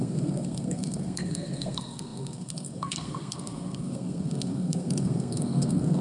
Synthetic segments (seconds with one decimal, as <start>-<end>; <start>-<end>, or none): 0.0-6.0